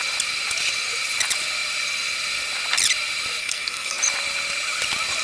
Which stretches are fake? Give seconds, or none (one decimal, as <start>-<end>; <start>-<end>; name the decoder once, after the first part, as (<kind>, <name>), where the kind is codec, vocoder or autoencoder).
3.4-4.0 (codec, SNAC)

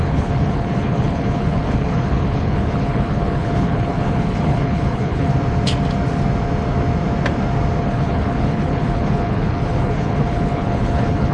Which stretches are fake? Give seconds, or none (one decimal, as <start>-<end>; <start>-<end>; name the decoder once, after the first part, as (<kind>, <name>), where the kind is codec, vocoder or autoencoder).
0.0-5.3 (codec, HILCodec); 7.8-11.3

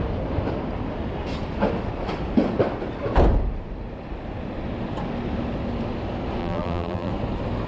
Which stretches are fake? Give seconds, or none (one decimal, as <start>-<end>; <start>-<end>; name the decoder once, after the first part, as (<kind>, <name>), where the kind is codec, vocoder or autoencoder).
6.4-7.1 (vocoder, BigVGAN v2)

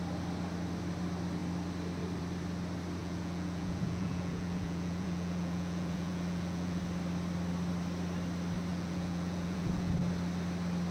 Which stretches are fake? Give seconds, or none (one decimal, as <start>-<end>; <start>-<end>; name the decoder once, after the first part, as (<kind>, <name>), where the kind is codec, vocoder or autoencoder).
3.0-6.8 (vocoder, Vocos); 8.7-9.9

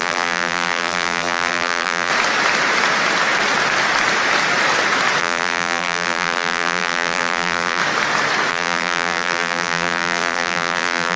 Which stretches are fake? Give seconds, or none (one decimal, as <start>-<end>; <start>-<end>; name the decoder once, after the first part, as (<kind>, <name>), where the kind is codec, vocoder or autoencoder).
0.0-2.1 (vocoder, BigVGAN v2); 5.2-7.8; 8.5-11.2

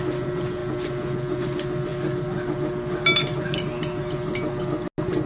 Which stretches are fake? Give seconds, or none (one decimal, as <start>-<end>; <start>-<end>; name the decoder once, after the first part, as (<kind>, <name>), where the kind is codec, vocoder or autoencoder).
none

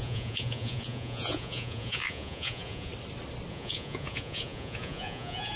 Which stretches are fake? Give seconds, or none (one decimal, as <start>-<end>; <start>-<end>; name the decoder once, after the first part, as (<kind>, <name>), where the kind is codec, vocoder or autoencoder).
0.0-2.9 (vocoder, Vocos); 3.5-5.6

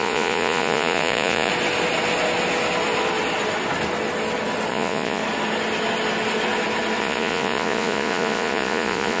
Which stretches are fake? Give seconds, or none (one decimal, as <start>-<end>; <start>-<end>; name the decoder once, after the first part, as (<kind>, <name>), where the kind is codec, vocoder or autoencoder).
0.0-1.5 (vocoder, Vocos); 4.7-5.2; 7.0-9.2